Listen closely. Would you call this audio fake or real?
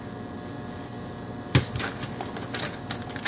real